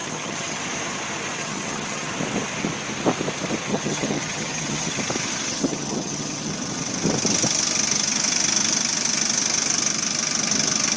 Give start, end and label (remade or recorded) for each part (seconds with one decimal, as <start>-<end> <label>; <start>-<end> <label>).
0.0-0.6 remade; 0.6-1.4 recorded; 1.4-2.1 remade; 2.1-3.7 recorded; 3.7-4.9 remade; 4.9-5.5 recorded; 5.5-6.5 remade; 6.5-11.0 recorded